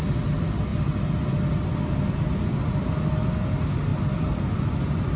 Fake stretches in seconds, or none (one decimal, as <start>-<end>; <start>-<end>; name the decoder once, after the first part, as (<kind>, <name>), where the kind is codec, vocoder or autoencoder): none

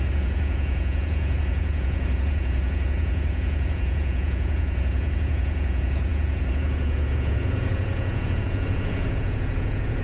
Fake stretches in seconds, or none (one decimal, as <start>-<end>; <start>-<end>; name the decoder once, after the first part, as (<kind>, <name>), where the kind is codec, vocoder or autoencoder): 0.0-10.0 (vocoder, Vocos)

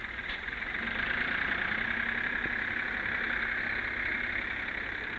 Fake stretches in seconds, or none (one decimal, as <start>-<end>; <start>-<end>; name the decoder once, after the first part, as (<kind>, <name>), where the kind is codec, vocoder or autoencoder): 0.0-0.7 (vocoder, Vocos)